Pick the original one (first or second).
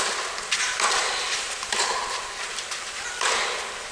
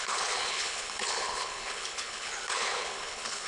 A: first